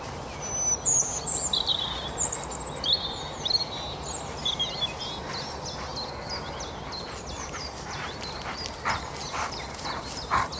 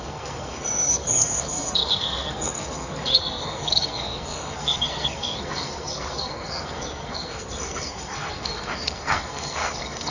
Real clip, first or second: first